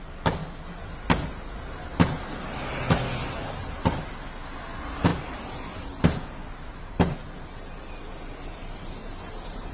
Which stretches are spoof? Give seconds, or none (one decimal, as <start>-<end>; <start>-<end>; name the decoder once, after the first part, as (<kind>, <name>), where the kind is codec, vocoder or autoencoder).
none